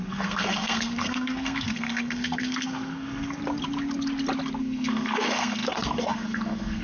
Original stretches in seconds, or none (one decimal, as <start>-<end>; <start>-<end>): 3.4-4.6